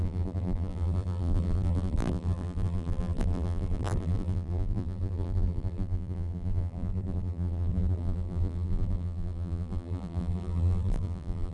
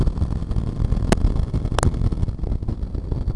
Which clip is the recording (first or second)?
second